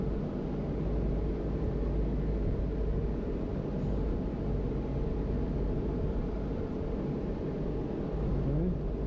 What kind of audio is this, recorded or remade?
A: recorded